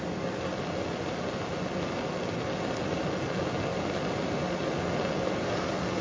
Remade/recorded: recorded